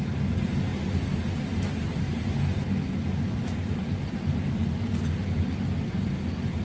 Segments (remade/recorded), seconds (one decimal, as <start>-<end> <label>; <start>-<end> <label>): 0.0-6.6 recorded